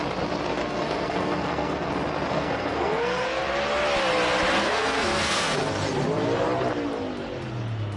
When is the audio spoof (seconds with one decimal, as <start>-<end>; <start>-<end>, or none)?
0.5-1.9; 2.3-3.4; 4.6-5.6